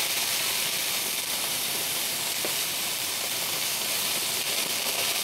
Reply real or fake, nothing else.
real